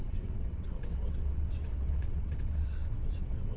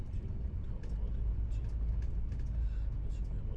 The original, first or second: second